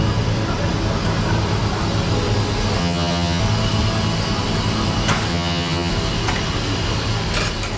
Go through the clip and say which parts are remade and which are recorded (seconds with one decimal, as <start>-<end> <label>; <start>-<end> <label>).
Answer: 0.0-2.8 recorded; 2.8-3.4 remade; 3.4-5.3 recorded; 5.3-5.9 remade; 5.9-7.8 recorded